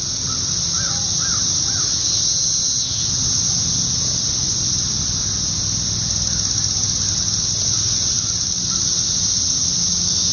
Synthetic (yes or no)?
no